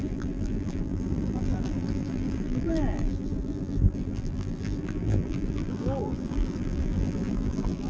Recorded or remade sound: remade